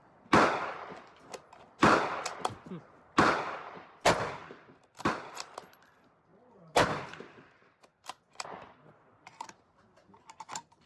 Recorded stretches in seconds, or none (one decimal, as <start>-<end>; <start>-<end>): 0.0-6.3; 6.9-7.9; 10.1-10.9